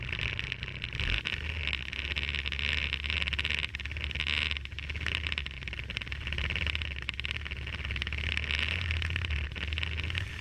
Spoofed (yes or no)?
no